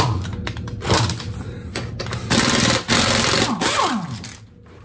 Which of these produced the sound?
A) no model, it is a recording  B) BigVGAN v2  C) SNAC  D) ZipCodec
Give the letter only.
A